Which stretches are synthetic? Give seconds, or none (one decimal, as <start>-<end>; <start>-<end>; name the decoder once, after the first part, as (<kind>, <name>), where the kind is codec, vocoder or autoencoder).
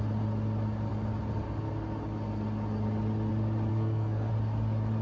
3.7-4.3 (codec, SNAC)